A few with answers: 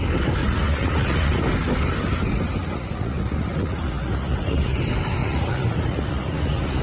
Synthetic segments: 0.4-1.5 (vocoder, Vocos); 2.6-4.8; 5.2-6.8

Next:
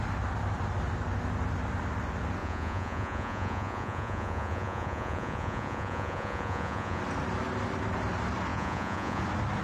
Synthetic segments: 2.4-7.0 (vocoder, Vocos); 8.5-9.2

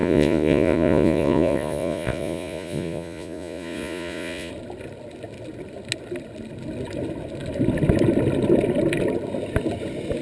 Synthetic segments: 0.0-4.5 (vocoder, Vocos)

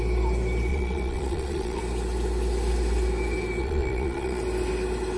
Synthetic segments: 0.7-1.8 (vocoder, Vocos); 3.6-4.4

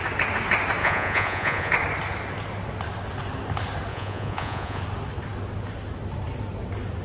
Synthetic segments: 0.8-1.7 (vocoder, Vocos); 3.9-4.8

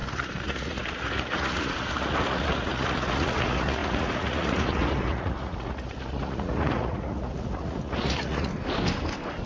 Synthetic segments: 0.0-8.5 (vocoder, Vocos)

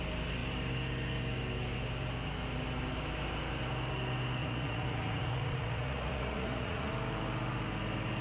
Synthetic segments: 4.4-6.9 (vocoder, Vocos)

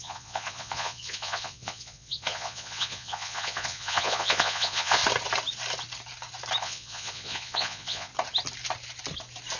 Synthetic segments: 0.0-5.0 (vocoder, Vocos); 6.6-8.1